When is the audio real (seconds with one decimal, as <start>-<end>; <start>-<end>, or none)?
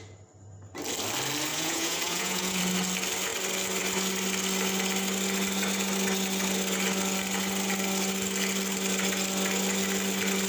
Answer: 0.0-1.5; 2.6-10.5